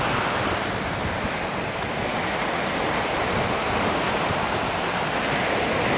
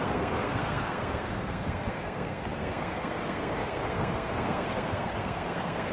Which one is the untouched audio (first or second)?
first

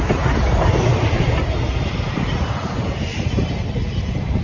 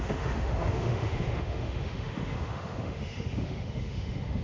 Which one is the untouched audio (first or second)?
first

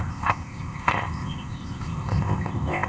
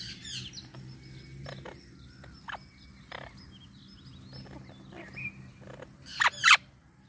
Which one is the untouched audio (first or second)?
second